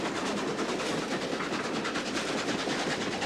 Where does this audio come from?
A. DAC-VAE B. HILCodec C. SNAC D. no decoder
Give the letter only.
D